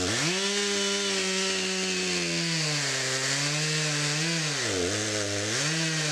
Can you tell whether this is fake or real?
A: real